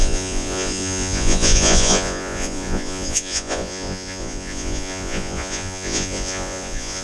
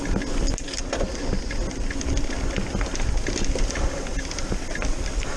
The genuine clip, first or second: second